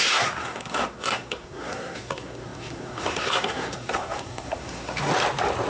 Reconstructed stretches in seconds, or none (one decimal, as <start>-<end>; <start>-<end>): 0.0-5.1

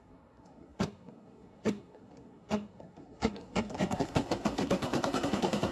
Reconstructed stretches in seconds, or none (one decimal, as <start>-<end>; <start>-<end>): 0.0-5.7

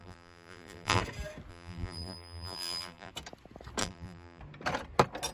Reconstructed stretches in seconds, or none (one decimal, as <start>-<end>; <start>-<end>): 0.0-1.0; 1.5-3.1; 3.8-4.4